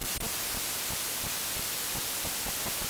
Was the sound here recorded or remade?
remade